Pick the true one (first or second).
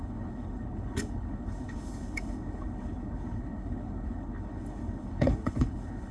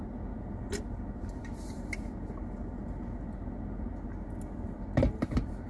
second